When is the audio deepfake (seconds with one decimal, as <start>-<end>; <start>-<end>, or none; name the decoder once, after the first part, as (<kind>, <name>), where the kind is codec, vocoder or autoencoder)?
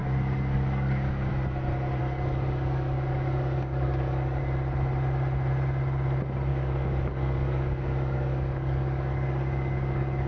0.0-1.3 (codec, DAC); 2.0-4.4; 6.5-10.3